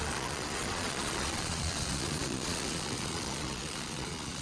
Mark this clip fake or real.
fake